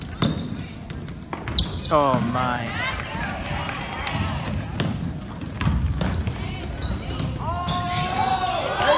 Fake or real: real